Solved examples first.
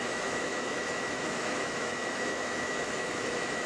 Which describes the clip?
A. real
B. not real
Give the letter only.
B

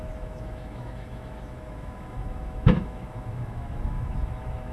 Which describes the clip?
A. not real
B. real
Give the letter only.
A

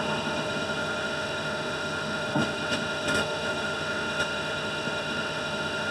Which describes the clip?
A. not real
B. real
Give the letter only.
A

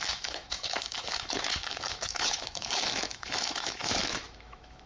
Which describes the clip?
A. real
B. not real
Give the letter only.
B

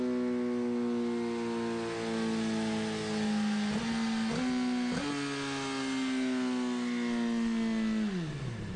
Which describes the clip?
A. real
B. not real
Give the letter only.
A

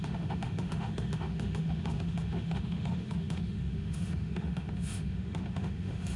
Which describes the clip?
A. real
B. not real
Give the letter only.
B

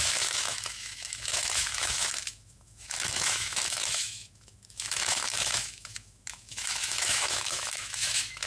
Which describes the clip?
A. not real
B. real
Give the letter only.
A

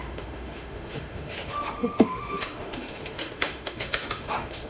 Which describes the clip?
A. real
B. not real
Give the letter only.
B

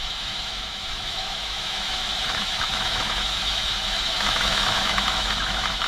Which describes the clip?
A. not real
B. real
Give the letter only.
A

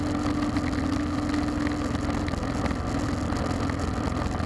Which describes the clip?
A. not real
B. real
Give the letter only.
B